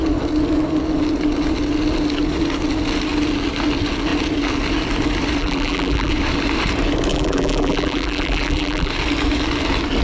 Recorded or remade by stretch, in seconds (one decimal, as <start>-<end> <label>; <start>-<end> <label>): 0.0-5.4 recorded; 5.4-6.1 remade; 6.1-7.1 recorded; 7.1-8.9 remade; 8.9-10.0 recorded